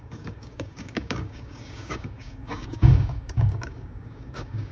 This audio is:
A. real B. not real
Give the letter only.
B